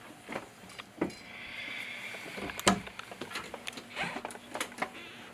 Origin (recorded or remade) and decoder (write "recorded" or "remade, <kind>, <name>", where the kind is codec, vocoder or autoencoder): recorded